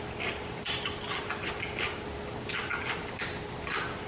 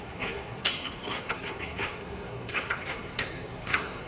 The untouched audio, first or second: first